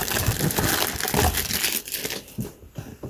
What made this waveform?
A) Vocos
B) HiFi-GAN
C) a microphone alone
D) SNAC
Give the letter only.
C